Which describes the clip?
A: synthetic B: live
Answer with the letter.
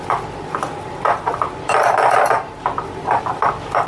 B